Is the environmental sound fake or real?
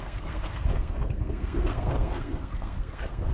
fake